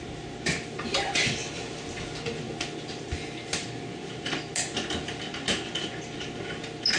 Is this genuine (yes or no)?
yes